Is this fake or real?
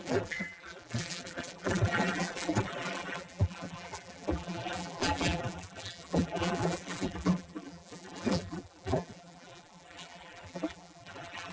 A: fake